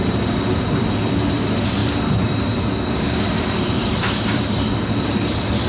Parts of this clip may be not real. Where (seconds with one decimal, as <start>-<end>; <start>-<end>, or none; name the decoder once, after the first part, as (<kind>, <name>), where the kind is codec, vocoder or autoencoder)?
0.0-5.7 (vocoder, BigVGAN v2)